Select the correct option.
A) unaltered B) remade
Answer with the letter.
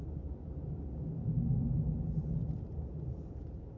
A